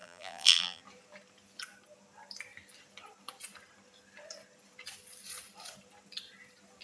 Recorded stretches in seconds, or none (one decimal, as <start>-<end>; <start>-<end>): 0.8-6.8

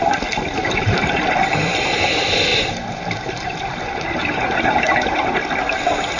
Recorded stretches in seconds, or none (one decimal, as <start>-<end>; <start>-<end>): 0.0-0.6; 1.1-2.5; 5.3-6.2

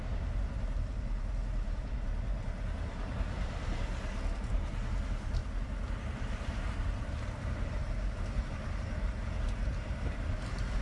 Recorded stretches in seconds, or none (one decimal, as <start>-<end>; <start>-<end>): 5.4-6.3

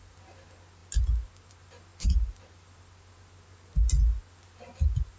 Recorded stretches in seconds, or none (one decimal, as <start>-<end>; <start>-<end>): 0.0-5.2

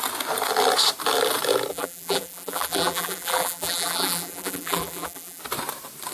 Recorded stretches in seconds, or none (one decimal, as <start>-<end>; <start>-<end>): 0.0-1.7; 5.4-6.1

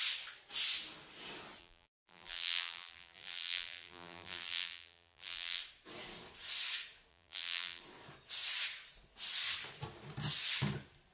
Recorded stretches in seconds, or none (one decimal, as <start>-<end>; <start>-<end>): 0.0-1.6; 5.6-7.1; 7.8-11.1

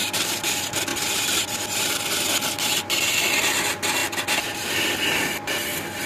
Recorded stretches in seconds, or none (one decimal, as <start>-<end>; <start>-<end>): 0.5-0.9; 1.4-6.1

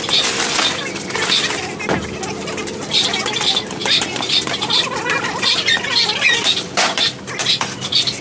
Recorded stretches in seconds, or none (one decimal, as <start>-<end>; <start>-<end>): 0.0-8.2